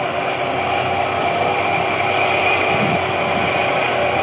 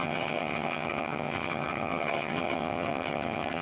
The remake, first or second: second